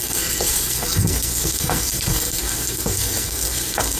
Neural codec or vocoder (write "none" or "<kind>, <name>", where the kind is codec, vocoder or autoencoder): codec, SNAC